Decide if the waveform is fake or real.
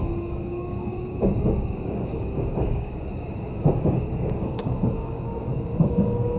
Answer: fake